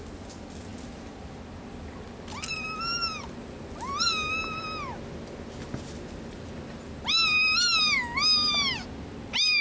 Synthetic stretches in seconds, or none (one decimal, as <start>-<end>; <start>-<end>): none